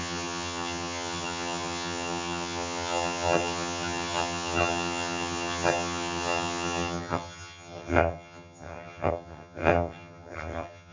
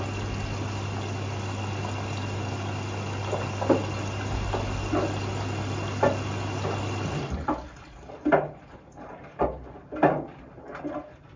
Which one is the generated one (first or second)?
first